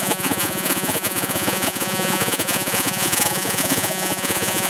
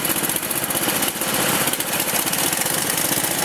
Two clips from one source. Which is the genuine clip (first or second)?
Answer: second